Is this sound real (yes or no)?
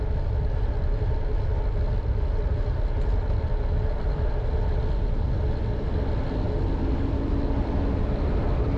yes